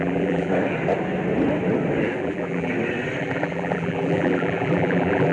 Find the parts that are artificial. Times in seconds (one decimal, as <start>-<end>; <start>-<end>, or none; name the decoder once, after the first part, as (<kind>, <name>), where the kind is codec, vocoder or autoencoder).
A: 0.0-0.5 (vocoder, BigVGAN v2); 2.2-2.7; 3.2-5.3